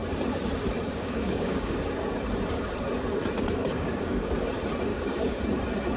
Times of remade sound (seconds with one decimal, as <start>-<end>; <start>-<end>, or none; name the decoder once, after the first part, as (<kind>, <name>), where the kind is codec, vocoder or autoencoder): 0.9-1.8 (codec, DAC); 3.6-4.3; 4.9-5.4